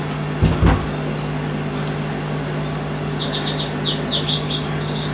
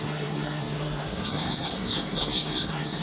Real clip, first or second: first